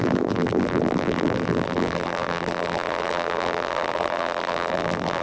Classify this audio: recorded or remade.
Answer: remade